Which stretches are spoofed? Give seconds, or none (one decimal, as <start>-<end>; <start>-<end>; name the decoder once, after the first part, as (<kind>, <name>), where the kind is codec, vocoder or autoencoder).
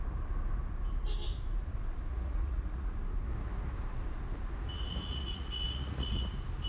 2.1-2.9 (vocoder, Vocos); 4.7-6.3